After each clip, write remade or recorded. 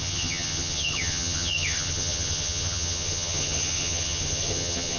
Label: remade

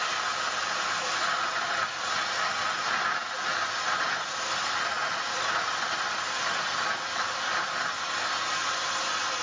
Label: recorded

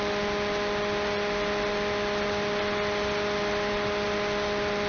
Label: recorded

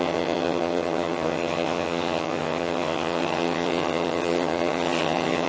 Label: remade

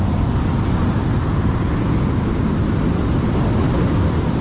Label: recorded